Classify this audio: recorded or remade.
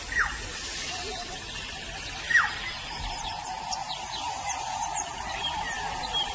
recorded